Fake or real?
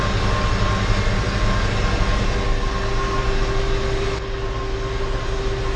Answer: real